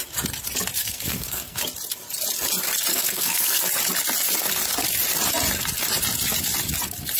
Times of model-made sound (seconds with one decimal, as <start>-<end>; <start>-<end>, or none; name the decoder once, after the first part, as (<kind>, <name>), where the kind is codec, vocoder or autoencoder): 0.8-1.6 (codec, SNAC); 2.9-3.6